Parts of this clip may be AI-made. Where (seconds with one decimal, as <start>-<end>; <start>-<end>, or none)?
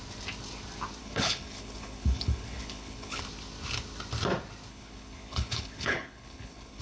1.0-3.2; 4.7-6.8